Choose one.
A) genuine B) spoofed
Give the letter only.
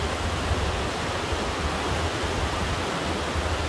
A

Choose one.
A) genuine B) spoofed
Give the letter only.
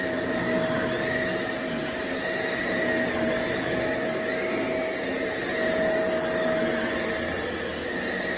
A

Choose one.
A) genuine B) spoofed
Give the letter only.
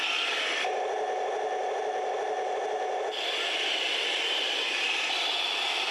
A